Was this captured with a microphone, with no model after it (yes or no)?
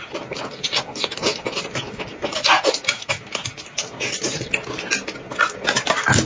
yes